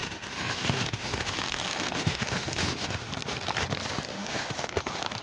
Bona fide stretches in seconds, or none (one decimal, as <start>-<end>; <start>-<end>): 3.1-4.1; 4.8-5.2